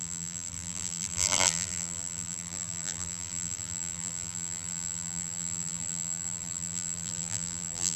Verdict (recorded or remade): remade